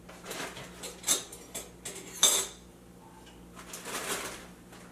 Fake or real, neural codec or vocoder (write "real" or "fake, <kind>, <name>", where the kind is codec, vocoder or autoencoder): real